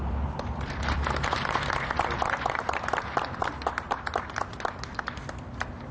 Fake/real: fake